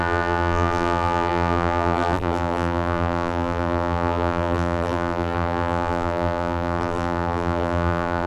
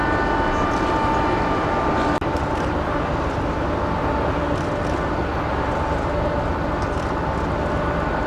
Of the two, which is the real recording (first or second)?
second